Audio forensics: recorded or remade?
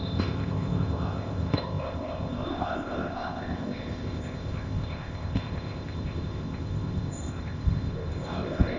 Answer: remade